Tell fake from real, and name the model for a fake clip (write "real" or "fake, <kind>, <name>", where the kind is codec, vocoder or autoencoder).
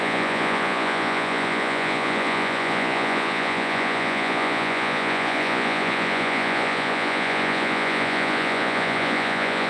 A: fake, vocoder, Vocos